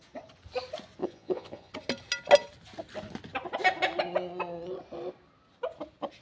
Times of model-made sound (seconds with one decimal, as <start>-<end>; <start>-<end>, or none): 1.0-1.7